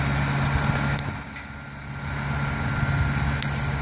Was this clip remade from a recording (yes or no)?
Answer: no